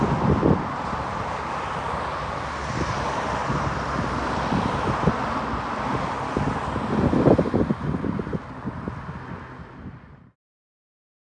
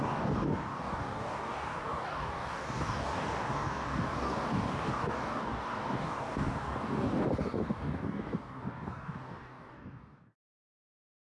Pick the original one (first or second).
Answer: first